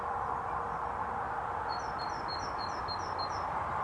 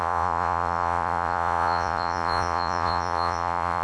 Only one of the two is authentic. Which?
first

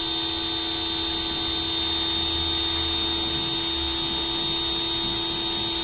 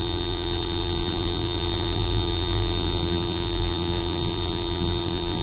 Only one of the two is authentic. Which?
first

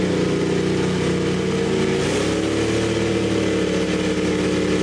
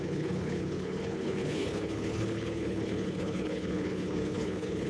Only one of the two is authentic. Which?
first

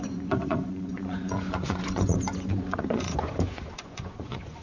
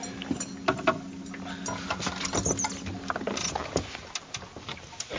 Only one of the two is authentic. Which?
second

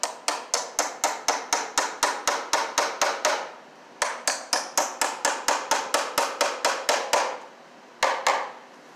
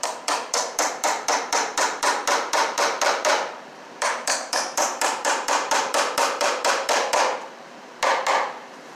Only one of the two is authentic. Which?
first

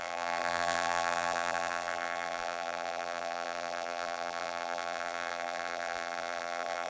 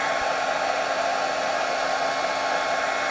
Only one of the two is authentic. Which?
second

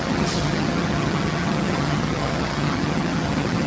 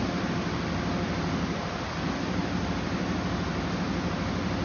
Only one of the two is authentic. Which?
second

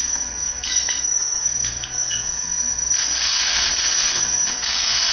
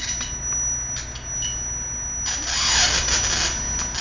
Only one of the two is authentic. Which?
second